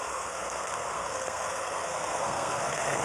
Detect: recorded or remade remade